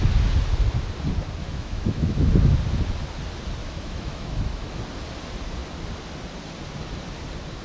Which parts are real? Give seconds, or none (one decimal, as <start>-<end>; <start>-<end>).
0.0-1.4; 2.2-3.6; 4.8-7.6